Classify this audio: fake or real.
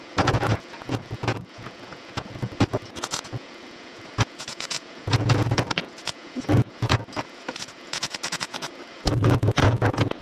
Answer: fake